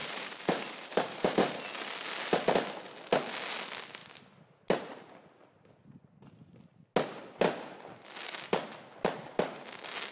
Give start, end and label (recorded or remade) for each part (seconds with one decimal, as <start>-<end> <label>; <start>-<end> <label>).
0.0-1.6 remade; 1.6-10.1 recorded